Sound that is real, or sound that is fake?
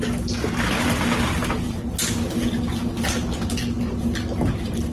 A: real